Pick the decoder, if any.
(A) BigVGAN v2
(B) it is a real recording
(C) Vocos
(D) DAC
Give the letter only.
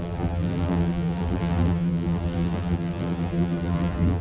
A